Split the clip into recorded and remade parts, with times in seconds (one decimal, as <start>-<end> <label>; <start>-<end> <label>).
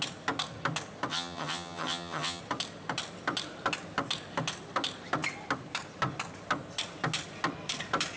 0.0-1.1 recorded; 1.1-2.4 remade; 2.4-8.2 recorded